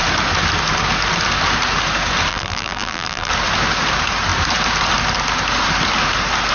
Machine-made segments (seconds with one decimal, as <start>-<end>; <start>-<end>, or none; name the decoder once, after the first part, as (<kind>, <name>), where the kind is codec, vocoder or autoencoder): 2.3-3.3 (vocoder, BigVGAN v2)

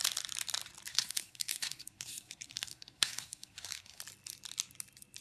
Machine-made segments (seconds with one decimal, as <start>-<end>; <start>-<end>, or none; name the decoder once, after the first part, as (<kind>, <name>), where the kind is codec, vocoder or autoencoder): 0.9-4.0 (codec, SNAC)

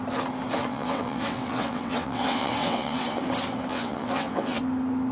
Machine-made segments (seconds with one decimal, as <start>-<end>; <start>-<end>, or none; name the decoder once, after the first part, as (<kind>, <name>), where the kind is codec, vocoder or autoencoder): 0.6-3.2 (vocoder, WaveNeXt); 3.7-4.6

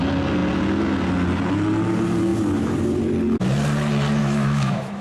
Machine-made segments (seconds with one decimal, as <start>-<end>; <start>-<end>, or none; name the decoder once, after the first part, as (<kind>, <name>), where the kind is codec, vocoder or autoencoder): 4.2-5.0 (autoencoder, DAC-VAE)

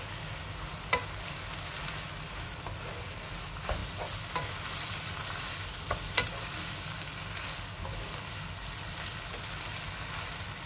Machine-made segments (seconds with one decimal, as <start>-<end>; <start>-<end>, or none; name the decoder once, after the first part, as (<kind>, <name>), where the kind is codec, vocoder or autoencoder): none

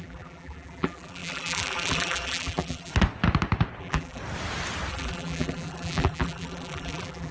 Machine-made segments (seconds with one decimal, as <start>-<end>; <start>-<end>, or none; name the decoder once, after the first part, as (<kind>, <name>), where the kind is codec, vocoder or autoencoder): 0.0-2.9 (vocoder, BigVGAN v2); 3.8-4.2; 4.9-7.3

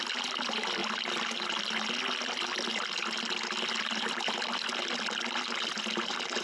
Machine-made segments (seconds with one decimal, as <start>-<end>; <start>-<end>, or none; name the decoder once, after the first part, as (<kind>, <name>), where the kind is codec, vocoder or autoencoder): none